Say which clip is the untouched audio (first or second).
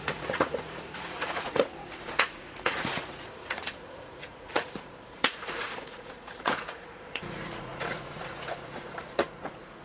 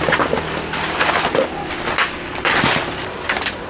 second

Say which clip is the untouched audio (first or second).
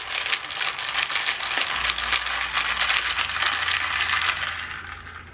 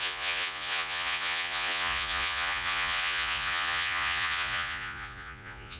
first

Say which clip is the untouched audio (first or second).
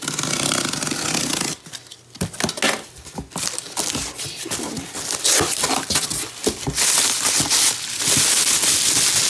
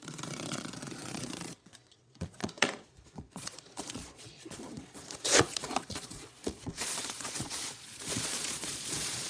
first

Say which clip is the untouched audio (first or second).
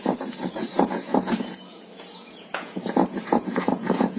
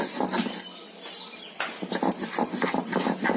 second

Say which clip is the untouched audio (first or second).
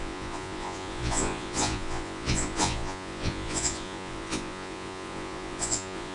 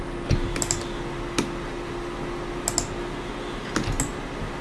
second